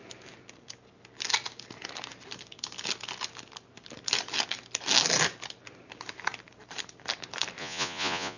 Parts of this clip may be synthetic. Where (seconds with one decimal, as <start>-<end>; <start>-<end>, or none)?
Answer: 7.6-8.4